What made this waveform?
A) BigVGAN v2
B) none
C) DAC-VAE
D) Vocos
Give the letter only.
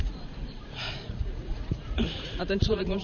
D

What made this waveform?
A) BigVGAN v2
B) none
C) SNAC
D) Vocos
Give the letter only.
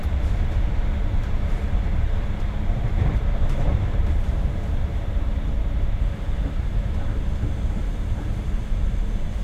A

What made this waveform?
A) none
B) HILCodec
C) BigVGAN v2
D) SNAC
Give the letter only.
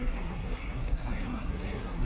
D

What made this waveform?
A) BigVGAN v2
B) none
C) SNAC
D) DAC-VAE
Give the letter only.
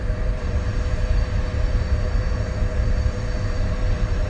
A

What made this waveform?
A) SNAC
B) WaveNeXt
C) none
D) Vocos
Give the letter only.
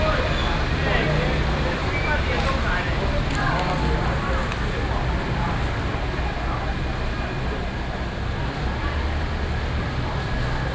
C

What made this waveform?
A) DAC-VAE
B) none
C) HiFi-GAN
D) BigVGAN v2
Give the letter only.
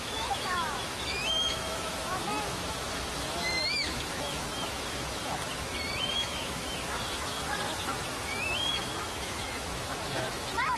A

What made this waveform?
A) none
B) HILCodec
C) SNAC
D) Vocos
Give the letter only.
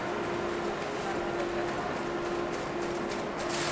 A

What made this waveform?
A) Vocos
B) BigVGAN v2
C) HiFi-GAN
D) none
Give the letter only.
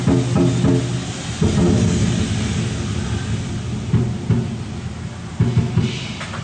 D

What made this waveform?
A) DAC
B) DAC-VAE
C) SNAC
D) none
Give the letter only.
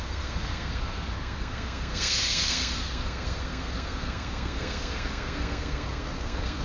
C